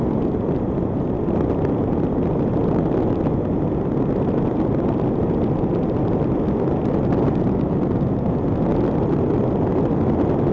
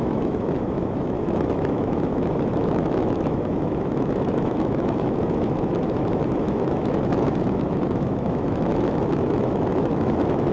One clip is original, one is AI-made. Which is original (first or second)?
first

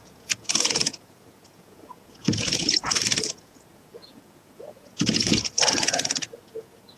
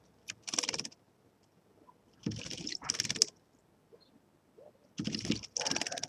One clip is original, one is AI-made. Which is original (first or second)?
second